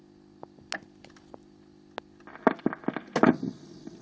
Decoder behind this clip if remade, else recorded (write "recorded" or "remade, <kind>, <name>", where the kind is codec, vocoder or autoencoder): recorded